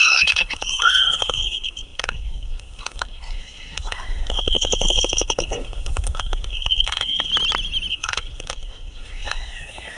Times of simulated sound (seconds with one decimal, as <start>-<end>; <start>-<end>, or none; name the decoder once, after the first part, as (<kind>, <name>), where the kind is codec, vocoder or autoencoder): 0.0-7.3 (codec, SNAC); 7.9-10.0

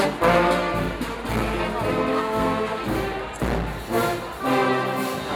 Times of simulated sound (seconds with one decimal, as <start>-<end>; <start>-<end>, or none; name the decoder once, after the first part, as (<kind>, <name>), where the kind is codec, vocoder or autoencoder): 2.1-2.8 (codec, SNAC)

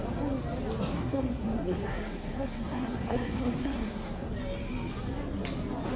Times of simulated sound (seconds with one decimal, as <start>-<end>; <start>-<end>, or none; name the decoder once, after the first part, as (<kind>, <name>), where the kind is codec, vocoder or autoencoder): 0.9-4.3 (codec, SNAC)